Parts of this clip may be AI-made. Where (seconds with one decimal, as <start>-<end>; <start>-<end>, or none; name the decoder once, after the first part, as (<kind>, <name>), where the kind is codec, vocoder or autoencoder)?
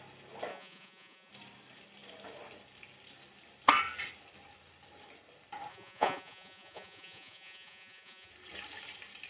0.5-1.3 (vocoder, Vocos); 5.7-8.3